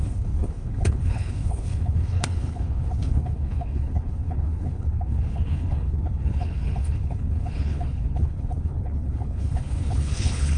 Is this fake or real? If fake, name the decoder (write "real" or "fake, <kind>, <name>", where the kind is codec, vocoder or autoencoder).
fake, codec, HILCodec